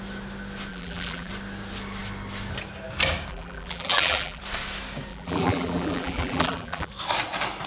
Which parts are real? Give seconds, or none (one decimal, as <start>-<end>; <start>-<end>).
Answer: 0.0-0.7; 1.3-3.3; 4.4-5.1; 6.9-7.7